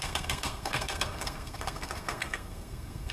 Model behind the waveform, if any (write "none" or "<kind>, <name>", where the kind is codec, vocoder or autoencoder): codec, SNAC